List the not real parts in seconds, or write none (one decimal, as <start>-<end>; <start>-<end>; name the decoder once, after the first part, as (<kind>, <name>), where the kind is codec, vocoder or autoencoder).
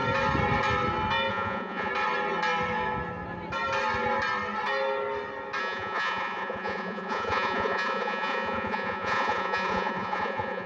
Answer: 1.3-1.9 (vocoder, Vocos); 5.6-10.7